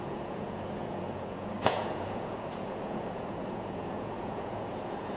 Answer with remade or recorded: remade